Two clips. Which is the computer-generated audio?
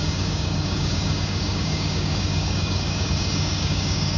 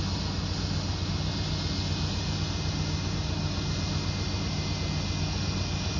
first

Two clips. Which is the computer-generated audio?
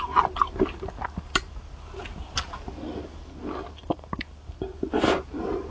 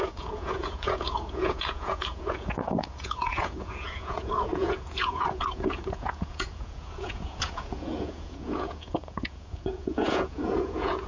second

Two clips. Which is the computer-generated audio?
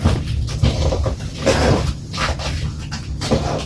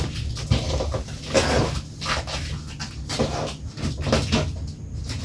first